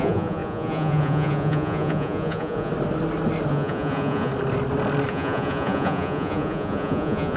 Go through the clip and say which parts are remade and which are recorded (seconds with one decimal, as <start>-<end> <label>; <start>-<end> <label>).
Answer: 0.0-2.7 remade; 2.7-3.5 recorded; 3.5-4.3 remade; 4.3-5.1 recorded; 5.1-7.4 remade

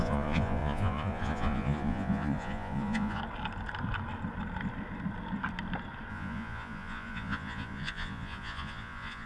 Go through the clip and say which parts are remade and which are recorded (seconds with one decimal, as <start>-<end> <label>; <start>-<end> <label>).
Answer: 0.0-3.2 remade; 3.2-6.1 recorded; 6.1-9.3 remade

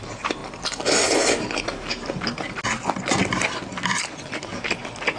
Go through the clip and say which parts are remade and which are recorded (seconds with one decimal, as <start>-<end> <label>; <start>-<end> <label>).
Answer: 0.0-5.2 recorded

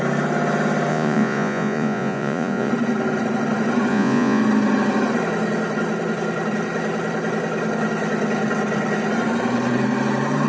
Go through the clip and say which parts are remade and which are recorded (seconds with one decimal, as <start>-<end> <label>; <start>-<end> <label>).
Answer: 0.0-0.9 recorded; 0.9-2.7 remade; 2.7-3.9 recorded; 3.9-4.4 remade; 4.4-10.5 recorded

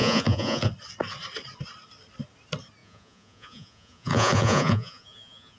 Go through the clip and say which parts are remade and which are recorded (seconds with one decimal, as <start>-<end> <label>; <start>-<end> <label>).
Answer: 0.0-0.7 remade; 0.7-2.8 recorded; 2.8-5.6 remade

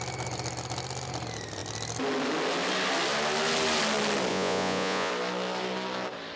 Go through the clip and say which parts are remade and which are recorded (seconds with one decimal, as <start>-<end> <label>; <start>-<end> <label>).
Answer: 0.0-4.3 recorded; 4.3-5.1 remade; 5.1-6.4 recorded